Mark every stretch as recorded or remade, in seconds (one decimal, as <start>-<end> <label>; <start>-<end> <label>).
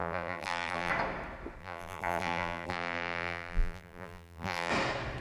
0.0-0.9 remade; 0.9-1.6 recorded; 1.6-4.7 remade; 4.7-5.2 recorded